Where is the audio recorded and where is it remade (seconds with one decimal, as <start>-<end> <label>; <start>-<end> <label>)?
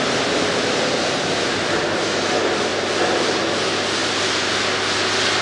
0.0-5.4 recorded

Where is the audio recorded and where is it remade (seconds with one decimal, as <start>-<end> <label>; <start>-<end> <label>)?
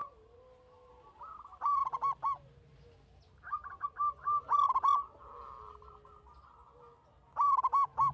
0.0-8.1 recorded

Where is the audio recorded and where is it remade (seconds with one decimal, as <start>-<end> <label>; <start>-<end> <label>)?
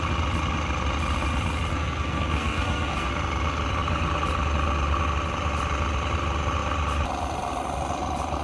0.0-1.7 recorded; 1.7-3.1 remade; 3.1-8.4 recorded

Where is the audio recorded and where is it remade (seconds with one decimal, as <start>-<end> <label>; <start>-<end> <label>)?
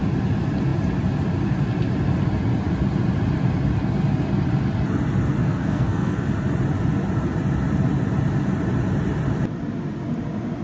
0.0-5.4 recorded; 5.4-6.3 remade; 6.3-10.6 recorded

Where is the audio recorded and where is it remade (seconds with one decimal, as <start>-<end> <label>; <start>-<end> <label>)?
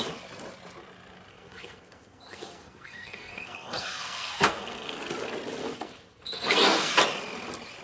0.0-1.3 recorded; 1.3-5.0 remade; 5.0-5.6 recorded; 5.6-6.9 remade; 6.9-7.8 recorded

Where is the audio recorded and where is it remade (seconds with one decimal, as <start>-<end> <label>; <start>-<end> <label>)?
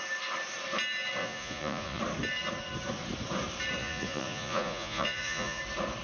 0.0-1.2 recorded; 1.2-2.0 remade; 2.0-3.8 recorded; 3.8-5.6 remade; 5.6-6.0 recorded